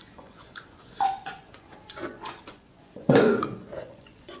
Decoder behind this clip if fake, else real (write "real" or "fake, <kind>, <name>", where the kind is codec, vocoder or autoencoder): fake, vocoder, Vocos